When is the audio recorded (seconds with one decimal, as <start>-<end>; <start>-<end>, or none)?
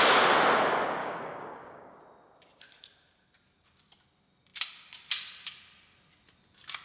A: 0.0-1.0; 2.0-6.8